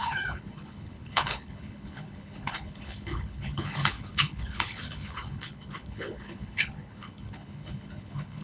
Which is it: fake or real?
fake